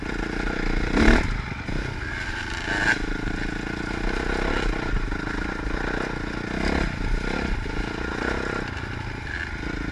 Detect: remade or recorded recorded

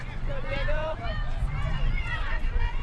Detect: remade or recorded remade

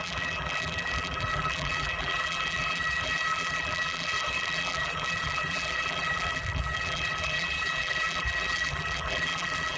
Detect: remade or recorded remade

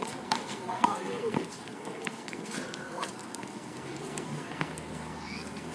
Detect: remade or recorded remade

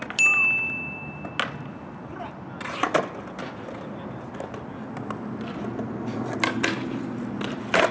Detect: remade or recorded recorded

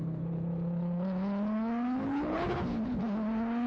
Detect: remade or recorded remade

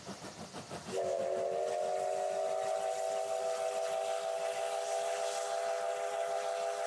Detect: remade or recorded recorded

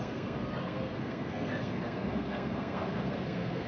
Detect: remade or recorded remade